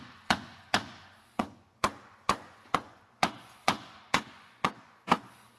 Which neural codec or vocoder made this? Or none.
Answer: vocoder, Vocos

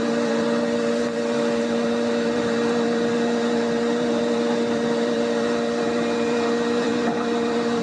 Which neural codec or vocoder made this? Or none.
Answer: vocoder, BigVGAN v2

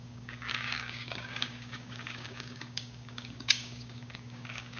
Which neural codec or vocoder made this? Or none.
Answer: codec, DAC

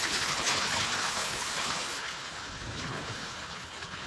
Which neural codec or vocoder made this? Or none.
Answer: codec, HILCodec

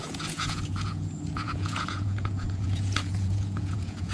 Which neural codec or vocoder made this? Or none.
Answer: vocoder, Vocos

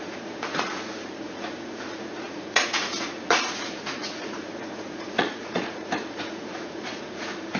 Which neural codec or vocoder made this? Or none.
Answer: vocoder, Vocos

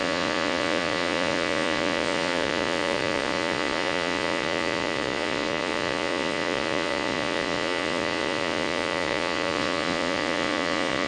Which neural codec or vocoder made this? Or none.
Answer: vocoder, Vocos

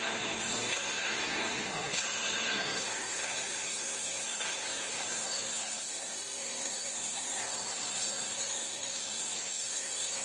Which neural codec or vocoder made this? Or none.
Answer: codec, SNAC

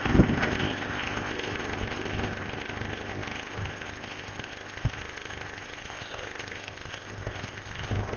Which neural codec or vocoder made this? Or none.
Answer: codec, ZipCodec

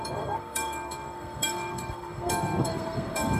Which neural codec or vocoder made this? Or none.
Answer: codec, SNAC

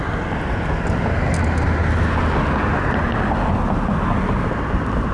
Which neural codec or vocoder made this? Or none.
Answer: none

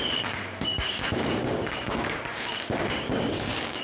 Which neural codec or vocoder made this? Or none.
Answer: codec, DAC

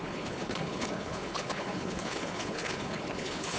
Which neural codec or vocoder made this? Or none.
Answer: codec, HILCodec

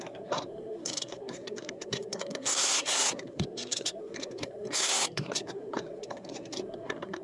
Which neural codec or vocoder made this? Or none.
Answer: codec, SNAC